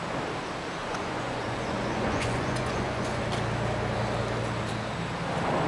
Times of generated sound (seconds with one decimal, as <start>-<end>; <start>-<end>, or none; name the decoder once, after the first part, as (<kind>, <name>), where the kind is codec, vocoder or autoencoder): 0.8-3.2 (vocoder, Vocos)